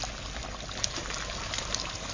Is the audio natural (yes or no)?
yes